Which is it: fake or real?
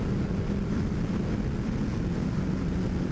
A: real